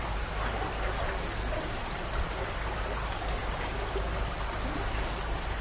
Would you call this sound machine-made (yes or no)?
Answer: no